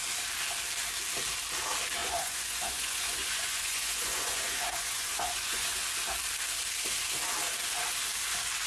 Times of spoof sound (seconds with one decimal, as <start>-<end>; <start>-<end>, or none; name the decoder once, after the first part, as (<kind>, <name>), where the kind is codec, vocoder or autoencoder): 2.0-5.8 (vocoder, Vocos)